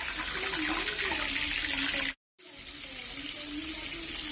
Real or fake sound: real